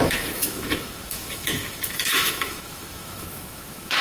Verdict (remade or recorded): remade